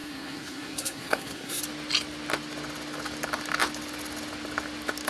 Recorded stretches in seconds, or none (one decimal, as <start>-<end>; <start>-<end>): 1.6-5.1